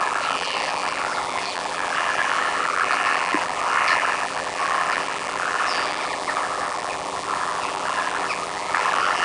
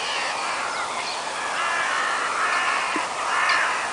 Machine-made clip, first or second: first